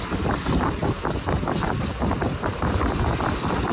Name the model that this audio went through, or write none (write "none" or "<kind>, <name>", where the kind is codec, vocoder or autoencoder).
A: none